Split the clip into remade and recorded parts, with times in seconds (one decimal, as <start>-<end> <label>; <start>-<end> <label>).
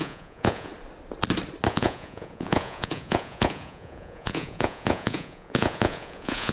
0.0-0.7 remade; 0.7-1.7 recorded; 1.7-6.5 remade